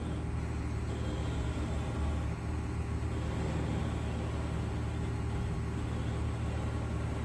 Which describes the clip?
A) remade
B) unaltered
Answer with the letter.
B